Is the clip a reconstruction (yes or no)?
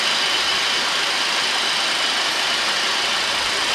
no